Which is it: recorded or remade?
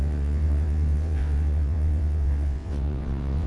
remade